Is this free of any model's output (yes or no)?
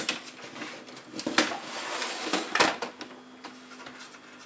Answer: yes